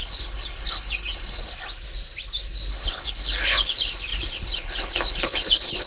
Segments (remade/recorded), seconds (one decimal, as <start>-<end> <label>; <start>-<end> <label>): 0.0-1.5 remade; 1.5-2.7 recorded; 2.7-5.9 remade